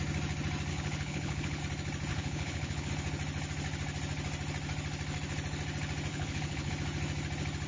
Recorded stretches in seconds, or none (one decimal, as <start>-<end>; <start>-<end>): 0.0-0.7; 1.6-2.1; 2.9-6.1; 6.7-7.7